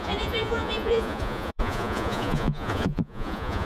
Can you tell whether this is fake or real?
fake